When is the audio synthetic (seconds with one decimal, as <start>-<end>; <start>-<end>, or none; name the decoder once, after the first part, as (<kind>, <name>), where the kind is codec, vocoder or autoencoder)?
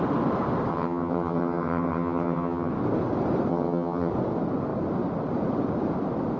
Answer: 0.7-2.7 (vocoder, HiFi-GAN); 3.5-4.1